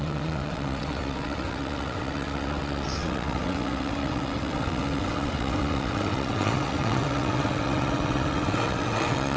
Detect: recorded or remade remade